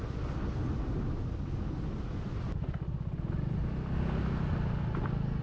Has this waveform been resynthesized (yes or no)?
no